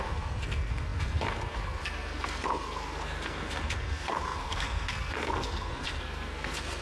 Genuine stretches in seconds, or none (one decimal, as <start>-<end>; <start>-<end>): none